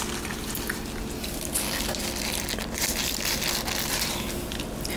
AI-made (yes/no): no